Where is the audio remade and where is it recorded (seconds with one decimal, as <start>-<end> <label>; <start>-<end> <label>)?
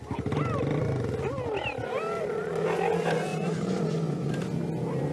0.0-3.3 recorded; 3.3-4.3 remade; 4.3-5.1 recorded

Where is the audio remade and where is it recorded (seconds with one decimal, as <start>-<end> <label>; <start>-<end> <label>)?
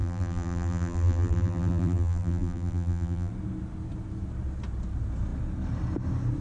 0.0-3.3 remade; 3.3-6.4 recorded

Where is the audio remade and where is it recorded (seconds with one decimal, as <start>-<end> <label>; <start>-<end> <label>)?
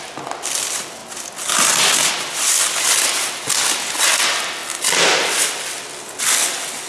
0.0-6.9 recorded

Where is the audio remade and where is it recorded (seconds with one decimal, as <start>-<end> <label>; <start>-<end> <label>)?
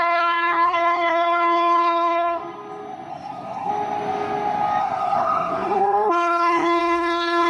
0.0-2.4 remade; 2.4-3.1 recorded; 3.1-3.7 remade; 3.7-4.8 recorded; 4.8-7.5 remade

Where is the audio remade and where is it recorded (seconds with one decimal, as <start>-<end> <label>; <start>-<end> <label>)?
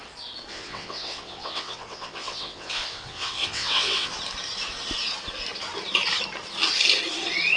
0.0-0.5 recorded; 0.5-4.1 remade; 4.1-7.6 recorded